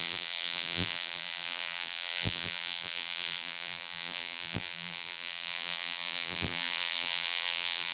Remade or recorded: remade